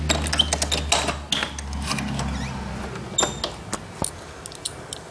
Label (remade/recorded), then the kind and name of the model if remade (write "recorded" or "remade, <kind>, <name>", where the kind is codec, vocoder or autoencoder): recorded